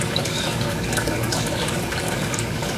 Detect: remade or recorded remade